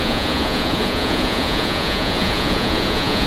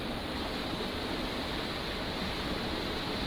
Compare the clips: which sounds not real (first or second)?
first